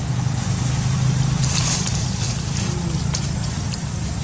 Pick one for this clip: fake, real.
real